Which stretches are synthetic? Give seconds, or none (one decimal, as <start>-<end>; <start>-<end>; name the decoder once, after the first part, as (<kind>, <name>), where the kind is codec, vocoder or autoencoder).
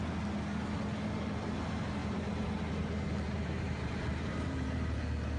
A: 2.0-5.0 (vocoder, BigVGAN v2)